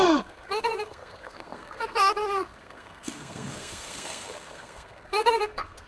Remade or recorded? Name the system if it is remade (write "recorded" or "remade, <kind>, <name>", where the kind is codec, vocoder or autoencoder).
remade, codec, SNAC